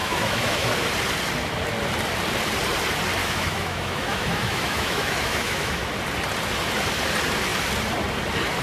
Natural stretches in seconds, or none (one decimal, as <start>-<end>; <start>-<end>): 0.7-3.2; 5.9-8.6